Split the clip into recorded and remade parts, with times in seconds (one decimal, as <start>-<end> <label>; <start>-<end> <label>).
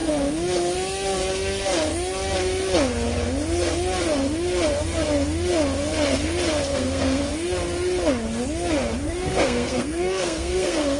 0.0-6.7 recorded; 6.7-7.2 remade; 7.2-9.0 recorded; 9.0-11.0 remade